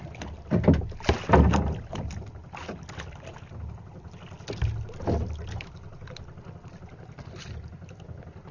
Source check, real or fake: real